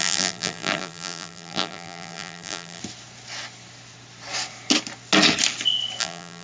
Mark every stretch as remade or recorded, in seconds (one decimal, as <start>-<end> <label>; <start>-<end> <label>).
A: 0.0-2.8 remade; 2.8-6.0 recorded; 6.0-6.4 remade